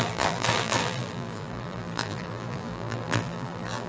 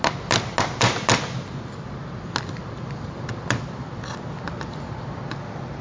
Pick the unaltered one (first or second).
second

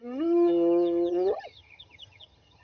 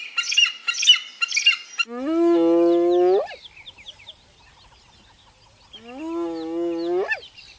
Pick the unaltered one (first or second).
second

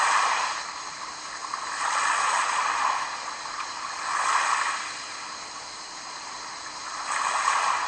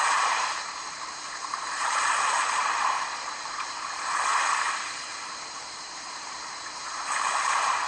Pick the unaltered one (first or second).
first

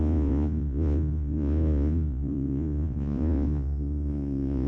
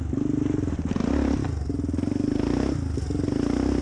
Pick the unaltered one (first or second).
second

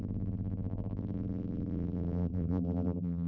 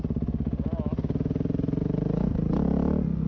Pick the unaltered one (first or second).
second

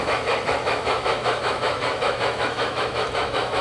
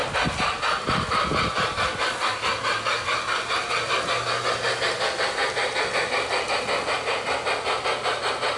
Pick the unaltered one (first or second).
second